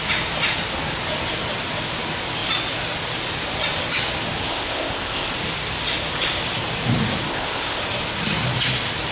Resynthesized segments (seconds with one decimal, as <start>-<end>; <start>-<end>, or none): 4.5-5.3; 7.3-7.8